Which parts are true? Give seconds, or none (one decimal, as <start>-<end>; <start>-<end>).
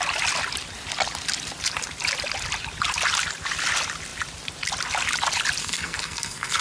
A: 0.0-5.6